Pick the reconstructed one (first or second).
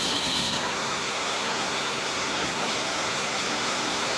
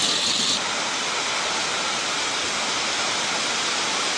first